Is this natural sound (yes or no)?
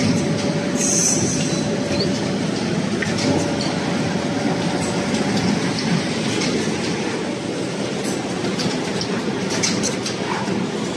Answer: yes